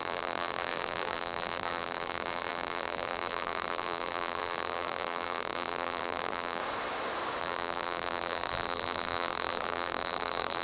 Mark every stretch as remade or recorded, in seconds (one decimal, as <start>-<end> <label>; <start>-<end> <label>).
0.0-6.6 remade; 6.6-7.4 recorded; 7.4-10.6 remade